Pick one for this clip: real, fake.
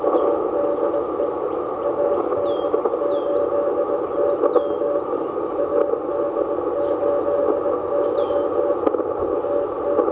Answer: real